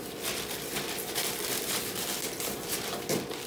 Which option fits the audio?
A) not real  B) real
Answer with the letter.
A